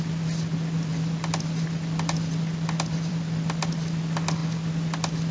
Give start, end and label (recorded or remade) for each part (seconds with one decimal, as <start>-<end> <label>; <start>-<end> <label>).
0.0-0.9 recorded; 0.9-3.7 remade; 3.7-5.3 recorded